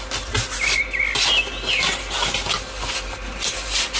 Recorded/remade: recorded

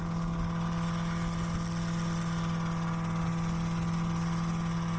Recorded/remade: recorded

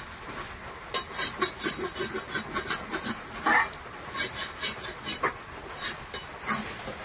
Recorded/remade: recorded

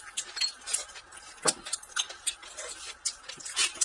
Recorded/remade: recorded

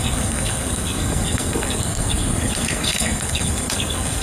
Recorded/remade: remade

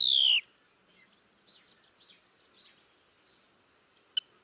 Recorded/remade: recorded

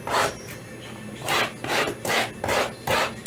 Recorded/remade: recorded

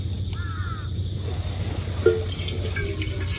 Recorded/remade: recorded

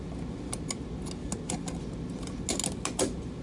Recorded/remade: recorded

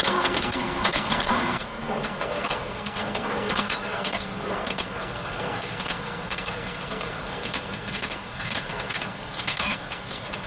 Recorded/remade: remade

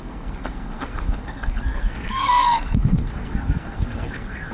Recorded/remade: remade